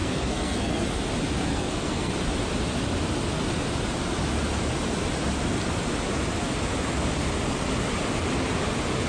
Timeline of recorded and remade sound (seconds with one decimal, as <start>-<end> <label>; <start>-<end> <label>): 0.0-1.0 remade; 1.0-1.5 recorded; 1.5-2.1 remade; 2.1-9.1 recorded